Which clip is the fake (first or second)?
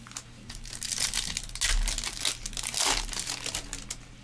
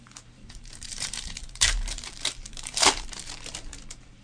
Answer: second